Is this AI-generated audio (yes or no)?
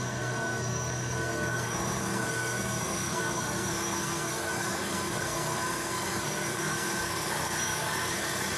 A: yes